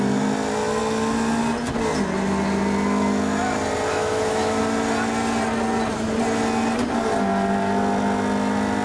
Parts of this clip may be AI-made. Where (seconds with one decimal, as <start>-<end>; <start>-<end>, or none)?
3.9-4.6